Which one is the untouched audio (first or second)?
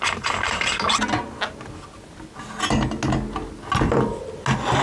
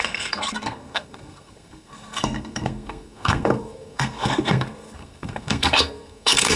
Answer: first